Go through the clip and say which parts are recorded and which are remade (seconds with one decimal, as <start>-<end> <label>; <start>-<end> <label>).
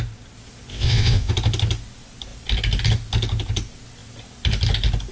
0.0-0.7 recorded; 0.7-1.3 remade; 1.3-5.1 recorded